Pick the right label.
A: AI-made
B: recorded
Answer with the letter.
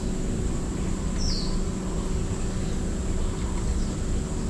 B